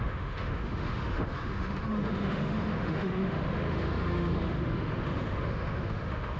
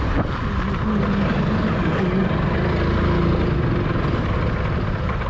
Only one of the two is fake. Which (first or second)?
first